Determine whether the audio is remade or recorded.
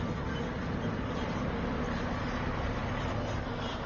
recorded